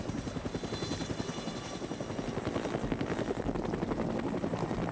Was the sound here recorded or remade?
recorded